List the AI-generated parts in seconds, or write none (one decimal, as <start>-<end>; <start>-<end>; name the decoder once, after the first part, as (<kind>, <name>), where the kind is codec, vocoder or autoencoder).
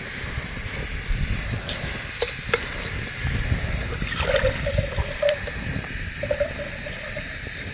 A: none